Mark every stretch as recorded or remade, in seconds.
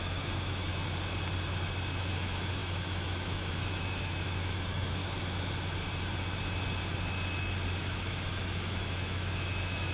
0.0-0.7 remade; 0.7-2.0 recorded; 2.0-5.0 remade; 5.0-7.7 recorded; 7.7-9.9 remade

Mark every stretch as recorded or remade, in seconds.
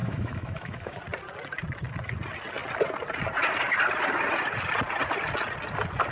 0.0-1.0 remade; 1.0-6.1 recorded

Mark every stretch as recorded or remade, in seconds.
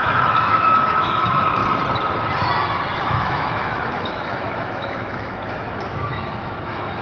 0.0-1.6 remade; 1.6-3.0 recorded; 3.0-7.0 remade